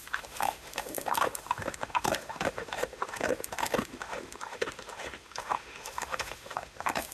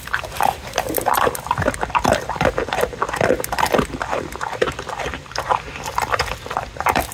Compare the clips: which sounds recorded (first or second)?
second